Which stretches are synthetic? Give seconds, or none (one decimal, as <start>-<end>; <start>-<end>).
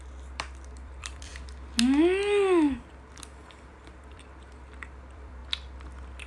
0.0-1.3; 2.9-5.4